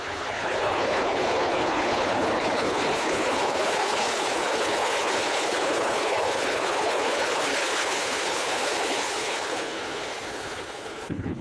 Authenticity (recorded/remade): remade